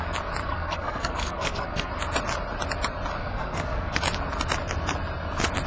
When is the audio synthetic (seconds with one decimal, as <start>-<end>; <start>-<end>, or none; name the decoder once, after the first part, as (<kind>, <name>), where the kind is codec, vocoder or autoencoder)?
0.4-1.9 (codec, SNAC); 3.2-4.0